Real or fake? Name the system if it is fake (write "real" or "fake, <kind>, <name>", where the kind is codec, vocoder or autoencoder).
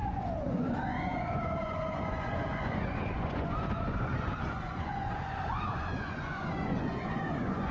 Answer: fake, vocoder, Vocos